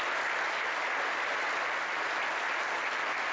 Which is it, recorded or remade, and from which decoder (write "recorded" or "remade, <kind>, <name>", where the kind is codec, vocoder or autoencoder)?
recorded